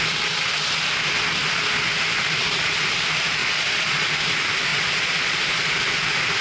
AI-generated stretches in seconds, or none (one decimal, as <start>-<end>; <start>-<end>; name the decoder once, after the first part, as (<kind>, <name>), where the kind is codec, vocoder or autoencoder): 3.4-4.1 (vocoder, Vocos); 4.7-5.7